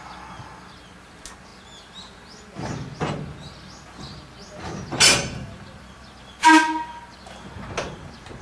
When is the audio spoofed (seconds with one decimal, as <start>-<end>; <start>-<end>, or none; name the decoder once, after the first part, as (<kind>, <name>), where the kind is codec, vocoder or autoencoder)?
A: none